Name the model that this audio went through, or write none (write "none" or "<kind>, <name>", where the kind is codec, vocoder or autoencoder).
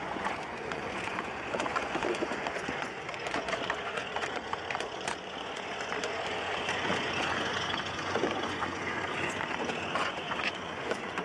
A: vocoder, Vocos